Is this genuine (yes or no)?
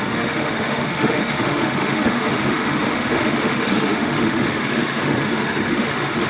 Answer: no